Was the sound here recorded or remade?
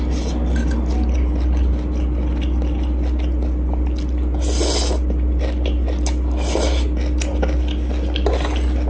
recorded